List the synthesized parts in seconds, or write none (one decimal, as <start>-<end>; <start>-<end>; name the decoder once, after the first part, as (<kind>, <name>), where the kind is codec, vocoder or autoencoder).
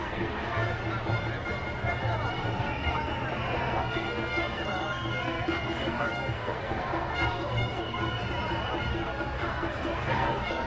0.0-0.8 (codec, SNAC); 2.3-3.1; 3.6-8.2; 8.9-10.7